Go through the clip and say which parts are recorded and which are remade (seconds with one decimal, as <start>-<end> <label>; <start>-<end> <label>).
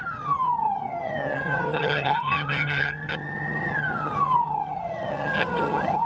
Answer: 0.0-6.1 remade